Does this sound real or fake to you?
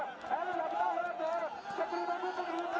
real